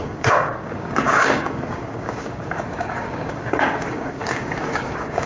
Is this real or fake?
fake